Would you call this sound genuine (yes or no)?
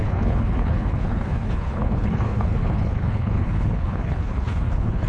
no